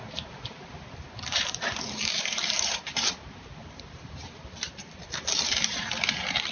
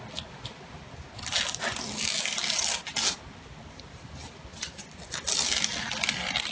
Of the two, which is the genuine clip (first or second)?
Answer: second